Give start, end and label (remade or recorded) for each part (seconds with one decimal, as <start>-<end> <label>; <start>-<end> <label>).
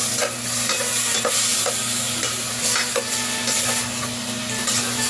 0.0-5.1 recorded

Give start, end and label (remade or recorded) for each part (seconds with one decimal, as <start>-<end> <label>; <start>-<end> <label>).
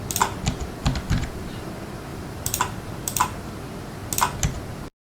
0.0-0.8 recorded; 0.8-1.7 remade; 1.7-2.1 recorded; 2.1-3.6 remade; 3.6-5.1 recorded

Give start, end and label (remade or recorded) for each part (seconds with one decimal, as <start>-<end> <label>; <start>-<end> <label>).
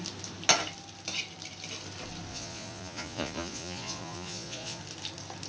0.0-2.3 recorded; 2.3-4.8 remade; 4.8-5.5 recorded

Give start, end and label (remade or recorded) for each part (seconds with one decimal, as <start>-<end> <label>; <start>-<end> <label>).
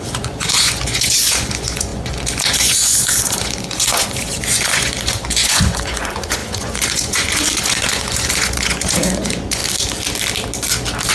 0.0-9.6 remade; 9.6-11.1 recorded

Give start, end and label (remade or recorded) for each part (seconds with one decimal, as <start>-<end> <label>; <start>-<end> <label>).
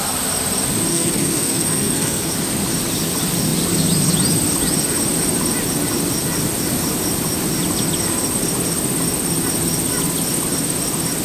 0.0-0.9 recorded; 0.9-2.3 remade; 2.3-11.2 recorded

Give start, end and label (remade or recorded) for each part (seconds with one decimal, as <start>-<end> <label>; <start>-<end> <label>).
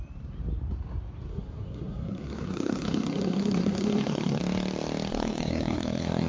0.0-1.3 recorded; 1.3-4.4 remade; 4.4-5.1 recorded; 5.1-6.3 remade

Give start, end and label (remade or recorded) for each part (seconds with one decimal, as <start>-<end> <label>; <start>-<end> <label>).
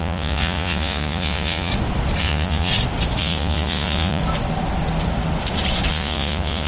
0.0-1.7 remade; 1.7-2.2 recorded; 2.2-2.7 remade; 2.7-3.2 recorded; 3.2-4.2 remade; 4.2-5.9 recorded; 5.9-6.7 remade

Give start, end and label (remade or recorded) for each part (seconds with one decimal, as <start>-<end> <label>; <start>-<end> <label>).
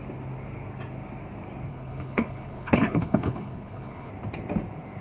0.0-1.7 recorded; 1.7-4.1 remade; 4.1-5.0 recorded